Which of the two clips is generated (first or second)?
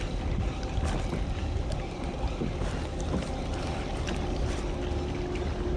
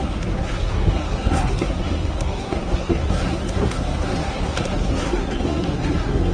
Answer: second